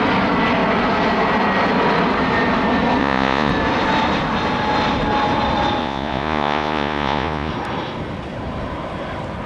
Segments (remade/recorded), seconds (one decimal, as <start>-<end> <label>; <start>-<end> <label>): 0.0-3.0 recorded; 3.0-3.5 remade; 3.5-5.8 recorded; 5.8-7.5 remade; 7.5-9.5 recorded